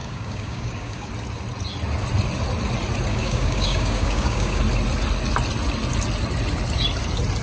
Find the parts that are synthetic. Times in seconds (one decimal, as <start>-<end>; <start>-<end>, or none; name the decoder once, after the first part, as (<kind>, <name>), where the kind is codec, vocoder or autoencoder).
0.0-1.1 (codec, DAC); 3.1-4.6